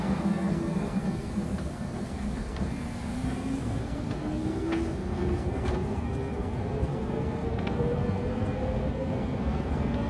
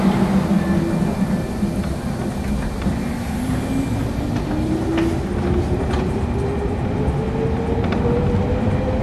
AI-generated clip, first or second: first